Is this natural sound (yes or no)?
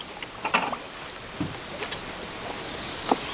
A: yes